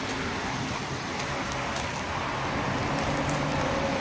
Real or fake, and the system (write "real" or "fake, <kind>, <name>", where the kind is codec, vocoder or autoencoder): real